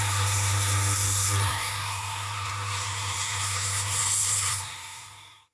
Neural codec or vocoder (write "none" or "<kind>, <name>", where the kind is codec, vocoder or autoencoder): codec, SNAC